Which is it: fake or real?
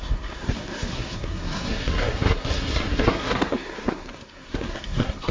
fake